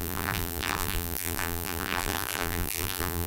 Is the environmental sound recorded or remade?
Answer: remade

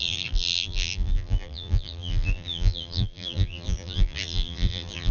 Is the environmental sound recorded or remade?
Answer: remade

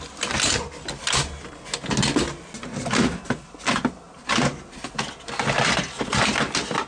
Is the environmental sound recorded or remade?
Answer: recorded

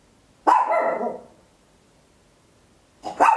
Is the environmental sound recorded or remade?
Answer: recorded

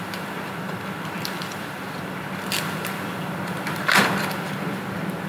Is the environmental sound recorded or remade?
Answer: remade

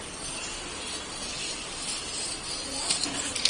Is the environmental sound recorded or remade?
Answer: remade